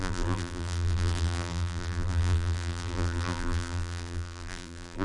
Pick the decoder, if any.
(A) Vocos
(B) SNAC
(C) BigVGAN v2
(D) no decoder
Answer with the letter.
C